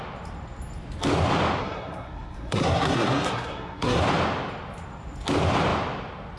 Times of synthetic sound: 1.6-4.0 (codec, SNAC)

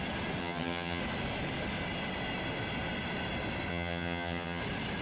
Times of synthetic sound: 0.4-1.0 (vocoder, HiFi-GAN); 3.7-4.6

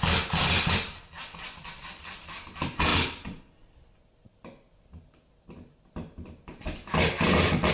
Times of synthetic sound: none

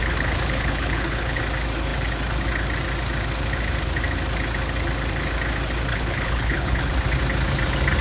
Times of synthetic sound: 0.0-1.4 (codec, HILCodec); 5.9-6.9

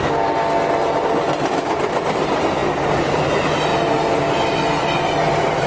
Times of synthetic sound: none

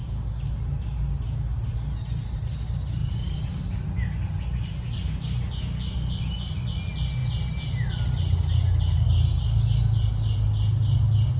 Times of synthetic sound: 3.0-3.6 (vocoder, BigVGAN v2)